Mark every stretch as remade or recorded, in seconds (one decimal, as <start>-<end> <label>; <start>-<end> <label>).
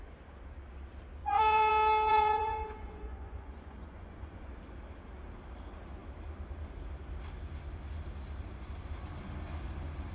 0.0-1.2 recorded; 1.2-1.7 remade; 1.7-2.1 recorded; 2.1-4.5 remade; 4.5-10.1 recorded